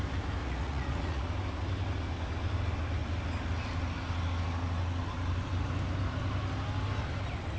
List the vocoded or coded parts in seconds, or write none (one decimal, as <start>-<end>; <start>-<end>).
0.4-1.2